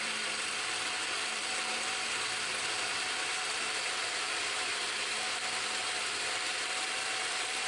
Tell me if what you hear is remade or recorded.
remade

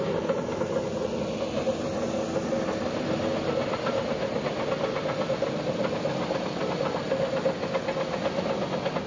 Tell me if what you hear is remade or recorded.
recorded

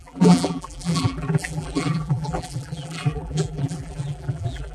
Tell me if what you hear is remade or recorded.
remade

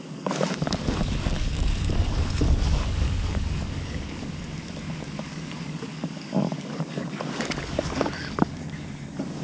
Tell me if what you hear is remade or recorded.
remade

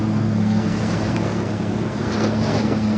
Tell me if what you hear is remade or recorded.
remade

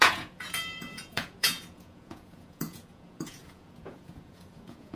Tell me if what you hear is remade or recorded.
remade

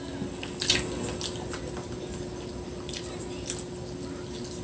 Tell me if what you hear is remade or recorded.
recorded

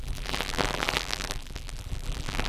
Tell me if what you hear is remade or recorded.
remade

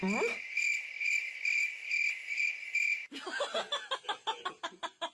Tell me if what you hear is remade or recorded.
recorded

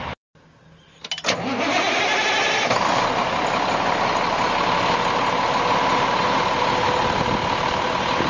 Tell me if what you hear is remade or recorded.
recorded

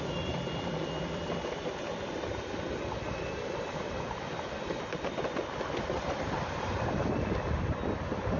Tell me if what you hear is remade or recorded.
remade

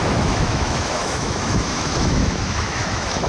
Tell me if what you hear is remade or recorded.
remade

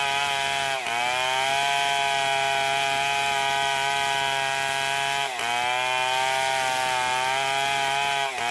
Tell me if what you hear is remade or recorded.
recorded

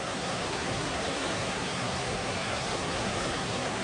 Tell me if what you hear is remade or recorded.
remade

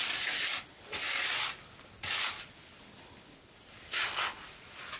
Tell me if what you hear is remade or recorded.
recorded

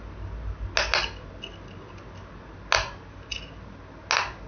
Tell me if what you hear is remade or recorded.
recorded